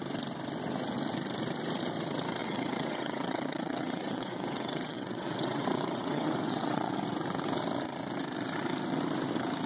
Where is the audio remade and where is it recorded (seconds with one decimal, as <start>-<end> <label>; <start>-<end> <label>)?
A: 0.0-2.4 recorded; 2.4-6.9 remade; 6.9-9.7 recorded